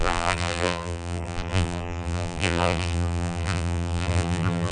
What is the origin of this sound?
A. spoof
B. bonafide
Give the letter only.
A